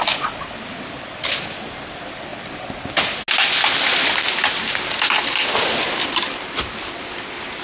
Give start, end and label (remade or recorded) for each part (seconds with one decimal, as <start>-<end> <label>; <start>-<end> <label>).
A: 0.0-7.6 recorded